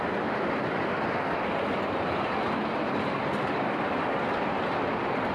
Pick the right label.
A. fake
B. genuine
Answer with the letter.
B